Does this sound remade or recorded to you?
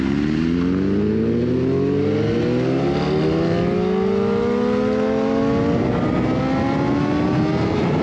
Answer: recorded